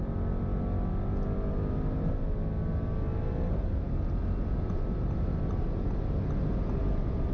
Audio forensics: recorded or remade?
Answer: recorded